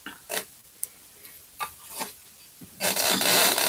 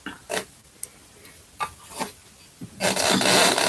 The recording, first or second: second